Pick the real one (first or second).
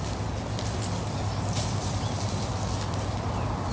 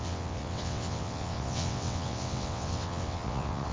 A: first